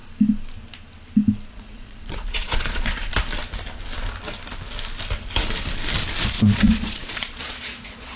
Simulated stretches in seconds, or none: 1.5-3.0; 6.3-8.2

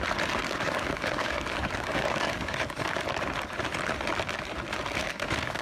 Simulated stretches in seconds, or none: 0.4-3.0; 5.0-5.6

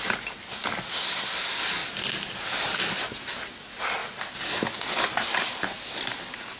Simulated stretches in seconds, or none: none

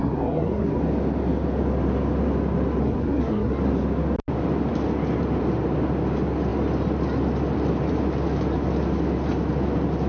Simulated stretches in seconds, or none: 0.0-0.8; 2.8-3.6

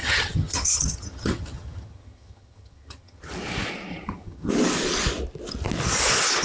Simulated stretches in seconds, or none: 0.0-3.2; 3.9-4.5

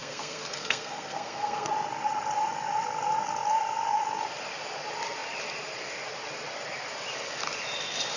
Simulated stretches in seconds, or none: 0.0-1.7

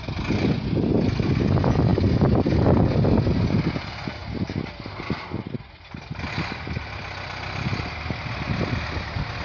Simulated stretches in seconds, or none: none

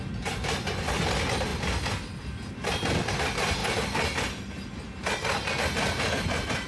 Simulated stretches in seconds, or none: none